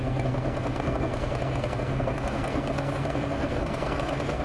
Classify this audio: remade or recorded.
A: remade